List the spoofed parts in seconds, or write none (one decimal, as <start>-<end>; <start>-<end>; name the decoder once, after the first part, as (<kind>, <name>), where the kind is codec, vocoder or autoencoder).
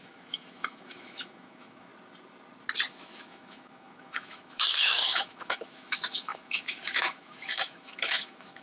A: 0.0-1.9 (autoencoder, DAC-VAE); 2.9-8.6